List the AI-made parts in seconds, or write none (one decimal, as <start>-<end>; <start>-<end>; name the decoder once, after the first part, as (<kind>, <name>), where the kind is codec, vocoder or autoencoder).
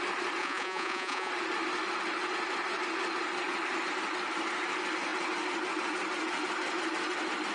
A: 0.4-1.3 (vocoder, Vocos)